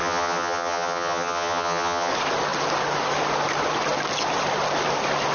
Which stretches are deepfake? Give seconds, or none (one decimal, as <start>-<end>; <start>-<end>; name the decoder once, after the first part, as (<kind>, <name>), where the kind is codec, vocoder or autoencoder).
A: 0.0-2.1 (vocoder, HiFi-GAN)